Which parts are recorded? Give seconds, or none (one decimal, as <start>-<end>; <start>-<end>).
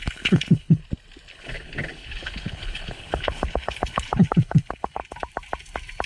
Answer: 0.8-1.3; 5.0-6.1